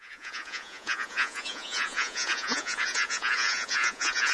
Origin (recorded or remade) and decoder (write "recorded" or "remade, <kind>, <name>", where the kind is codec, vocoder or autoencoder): remade, vocoder, Vocos